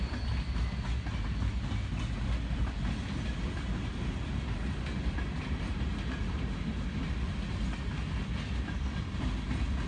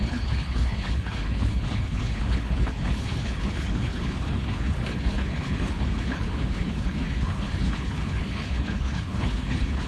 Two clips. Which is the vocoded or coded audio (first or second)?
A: second